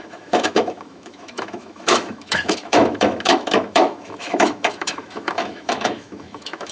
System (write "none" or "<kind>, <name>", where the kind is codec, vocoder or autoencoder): autoencoder, DAC-VAE